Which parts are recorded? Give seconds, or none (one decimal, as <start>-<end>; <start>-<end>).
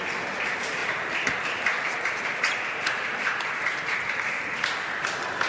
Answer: 0.0-5.5